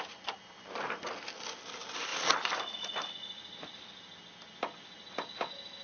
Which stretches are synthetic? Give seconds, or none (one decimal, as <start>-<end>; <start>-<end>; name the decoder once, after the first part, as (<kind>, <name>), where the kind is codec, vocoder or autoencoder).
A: none